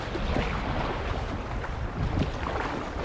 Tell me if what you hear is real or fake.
real